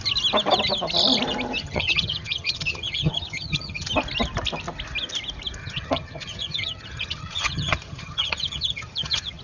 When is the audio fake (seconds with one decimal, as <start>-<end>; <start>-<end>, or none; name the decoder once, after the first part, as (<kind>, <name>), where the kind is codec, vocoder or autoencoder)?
1.6-3.9 (vocoder, HiFi-GAN); 5.6-9.4